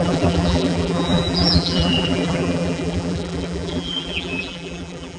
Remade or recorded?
remade